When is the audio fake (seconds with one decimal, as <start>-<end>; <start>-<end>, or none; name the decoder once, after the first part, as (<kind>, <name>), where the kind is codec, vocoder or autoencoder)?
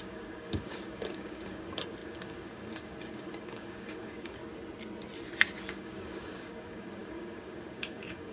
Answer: 0.0-4.4 (codec, DAC); 5.7-8.3